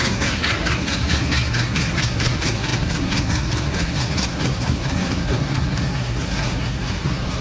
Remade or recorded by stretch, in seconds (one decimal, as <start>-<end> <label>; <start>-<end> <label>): 0.0-7.4 remade